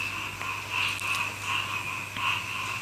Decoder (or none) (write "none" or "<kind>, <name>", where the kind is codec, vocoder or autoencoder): none